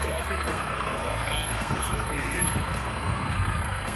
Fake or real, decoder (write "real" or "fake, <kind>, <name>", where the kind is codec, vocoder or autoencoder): fake, codec, SNAC